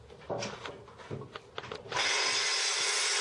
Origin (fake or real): real